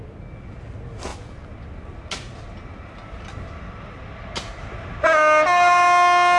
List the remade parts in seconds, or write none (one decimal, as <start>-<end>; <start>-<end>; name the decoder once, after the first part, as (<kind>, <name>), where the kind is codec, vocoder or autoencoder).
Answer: none